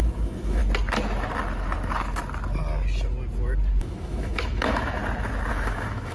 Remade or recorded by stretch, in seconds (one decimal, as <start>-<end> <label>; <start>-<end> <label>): 0.0-0.6 remade; 0.6-3.8 recorded; 3.8-5.0 remade; 5.0-5.5 recorded; 5.5-6.1 remade